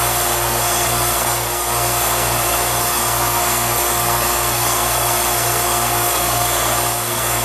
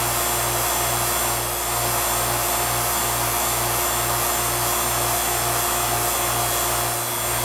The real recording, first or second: second